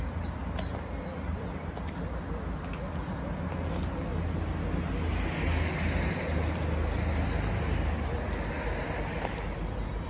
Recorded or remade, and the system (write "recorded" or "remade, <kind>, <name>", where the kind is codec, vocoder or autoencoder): recorded